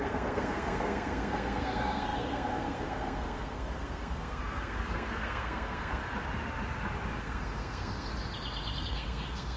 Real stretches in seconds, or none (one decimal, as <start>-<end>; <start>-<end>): 6.0-7.2; 8.1-8.8